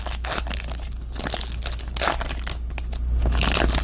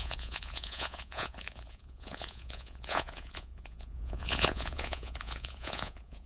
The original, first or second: first